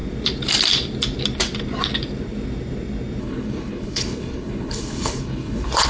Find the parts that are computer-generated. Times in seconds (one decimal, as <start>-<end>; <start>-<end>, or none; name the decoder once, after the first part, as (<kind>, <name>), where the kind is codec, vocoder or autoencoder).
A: 3.2-5.9 (codec, HILCodec)